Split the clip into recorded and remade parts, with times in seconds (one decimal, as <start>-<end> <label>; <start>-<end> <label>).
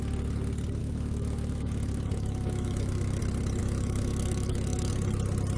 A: 0.0-0.8 recorded; 0.8-3.2 remade; 3.2-3.6 recorded; 3.6-4.9 remade; 4.9-5.6 recorded